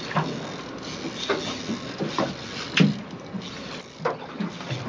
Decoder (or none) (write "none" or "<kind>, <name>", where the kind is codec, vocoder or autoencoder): none